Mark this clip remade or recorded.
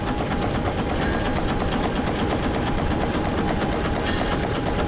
remade